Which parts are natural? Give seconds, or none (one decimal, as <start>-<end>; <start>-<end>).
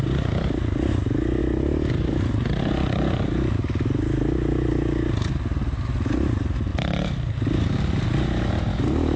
0.0-9.2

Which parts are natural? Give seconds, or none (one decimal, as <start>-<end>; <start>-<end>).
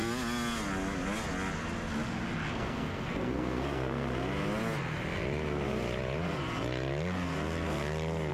0.0-2.5; 4.1-8.3